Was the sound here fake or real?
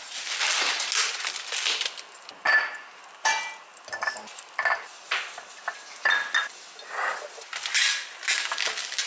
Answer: real